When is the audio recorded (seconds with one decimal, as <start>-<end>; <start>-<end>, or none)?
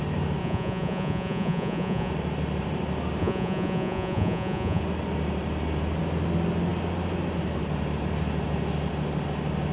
0.0-0.4; 2.1-3.2; 4.8-9.7